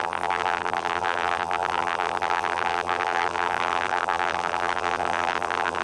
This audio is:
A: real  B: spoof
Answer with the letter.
B